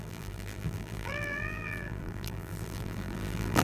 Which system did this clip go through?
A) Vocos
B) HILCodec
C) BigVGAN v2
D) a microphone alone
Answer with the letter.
C